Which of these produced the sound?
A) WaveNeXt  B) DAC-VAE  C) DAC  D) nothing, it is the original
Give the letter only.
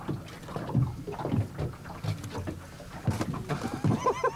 D